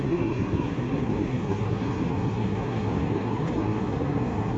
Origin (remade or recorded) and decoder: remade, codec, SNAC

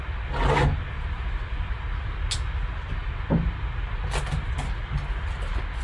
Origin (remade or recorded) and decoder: recorded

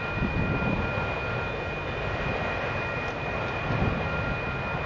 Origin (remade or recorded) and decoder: recorded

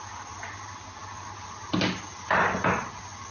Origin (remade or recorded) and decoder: recorded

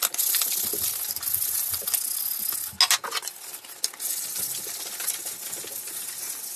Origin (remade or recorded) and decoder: recorded